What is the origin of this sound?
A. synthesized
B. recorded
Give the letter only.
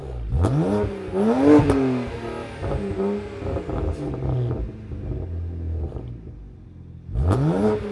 B